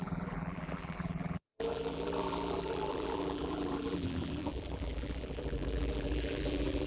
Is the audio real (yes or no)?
no